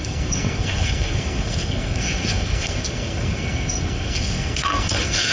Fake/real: fake